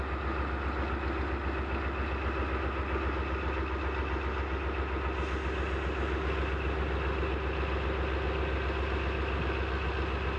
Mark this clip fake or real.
real